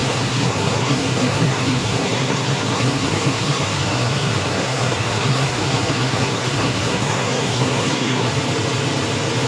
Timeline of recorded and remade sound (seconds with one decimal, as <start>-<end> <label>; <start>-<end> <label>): 0.0-8.3 remade; 8.3-9.5 recorded